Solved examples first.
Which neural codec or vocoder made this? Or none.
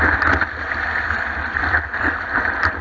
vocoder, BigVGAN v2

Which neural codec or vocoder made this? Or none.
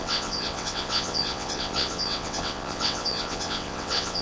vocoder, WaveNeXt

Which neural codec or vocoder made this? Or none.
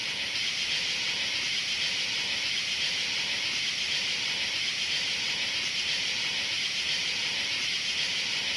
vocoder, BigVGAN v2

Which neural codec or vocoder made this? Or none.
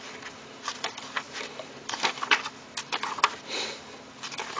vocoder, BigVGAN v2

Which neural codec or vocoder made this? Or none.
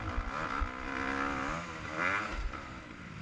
none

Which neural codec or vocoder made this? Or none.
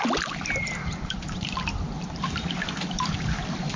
vocoder, BigVGAN v2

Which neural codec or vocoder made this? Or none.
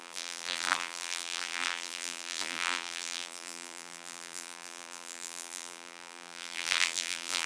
vocoder, BigVGAN v2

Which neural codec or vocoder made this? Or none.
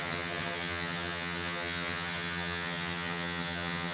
vocoder, HiFi-GAN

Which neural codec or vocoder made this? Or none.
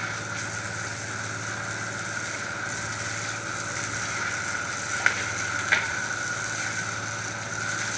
none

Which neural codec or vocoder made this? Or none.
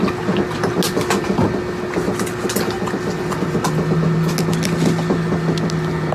none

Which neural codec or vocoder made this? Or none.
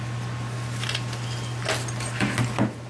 none